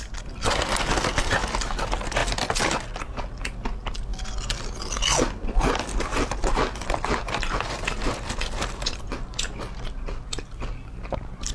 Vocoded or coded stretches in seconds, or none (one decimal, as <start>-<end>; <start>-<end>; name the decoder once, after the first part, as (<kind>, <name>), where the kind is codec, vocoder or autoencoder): none